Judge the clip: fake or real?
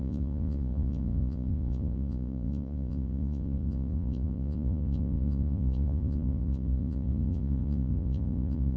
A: fake